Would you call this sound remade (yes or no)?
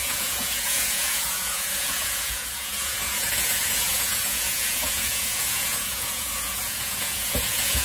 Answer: yes